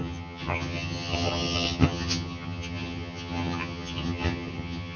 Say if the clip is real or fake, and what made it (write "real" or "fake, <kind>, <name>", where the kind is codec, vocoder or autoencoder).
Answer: fake, vocoder, HiFi-GAN